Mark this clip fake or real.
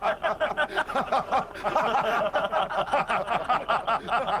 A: real